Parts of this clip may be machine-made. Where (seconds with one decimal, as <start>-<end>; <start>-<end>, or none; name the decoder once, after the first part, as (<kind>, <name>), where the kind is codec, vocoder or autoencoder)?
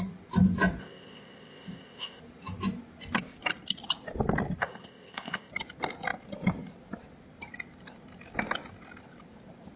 0.8-2.2 (codec, ZipCodec); 4.6-5.5